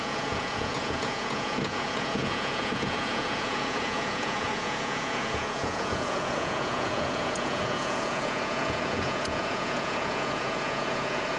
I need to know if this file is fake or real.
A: fake